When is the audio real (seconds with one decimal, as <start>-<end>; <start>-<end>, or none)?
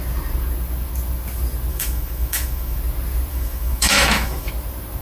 0.0-1.7; 2.8-3.3; 4.5-5.0